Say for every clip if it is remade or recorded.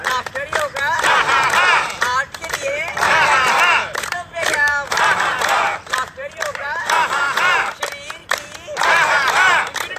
remade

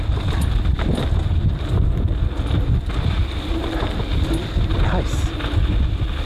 recorded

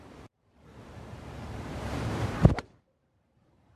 remade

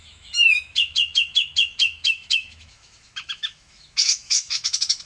remade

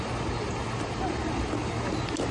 recorded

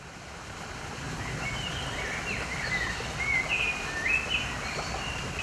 recorded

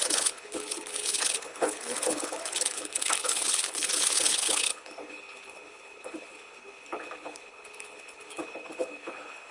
remade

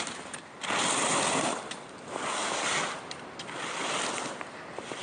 recorded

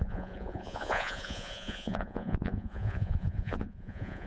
remade